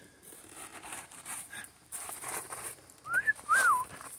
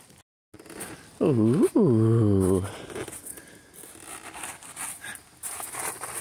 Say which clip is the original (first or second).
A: second